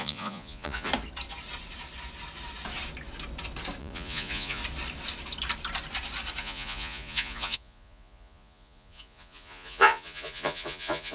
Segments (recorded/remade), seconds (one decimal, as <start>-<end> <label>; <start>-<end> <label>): 0.0-0.9 remade; 0.9-3.8 recorded; 3.8-4.6 remade; 4.6-6.4 recorded; 6.4-11.1 remade